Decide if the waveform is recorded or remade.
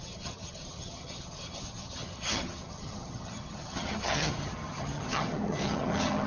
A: remade